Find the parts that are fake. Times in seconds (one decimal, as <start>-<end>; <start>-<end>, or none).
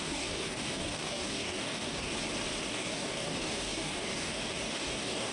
0.0-2.1; 2.7-5.3